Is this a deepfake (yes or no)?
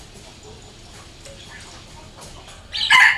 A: no